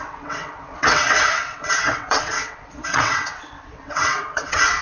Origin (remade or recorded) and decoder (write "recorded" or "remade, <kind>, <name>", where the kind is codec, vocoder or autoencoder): remade, vocoder, WaveNeXt